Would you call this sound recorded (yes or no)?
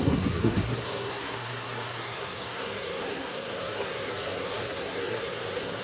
no